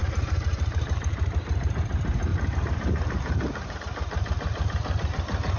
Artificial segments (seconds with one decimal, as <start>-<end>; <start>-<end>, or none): 0.0-1.9; 2.3-3.8